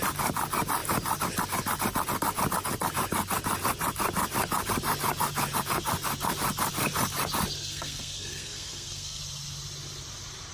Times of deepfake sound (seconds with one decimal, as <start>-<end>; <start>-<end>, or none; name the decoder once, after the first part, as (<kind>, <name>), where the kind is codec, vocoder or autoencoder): 7.6-9.2 (codec, SNAC)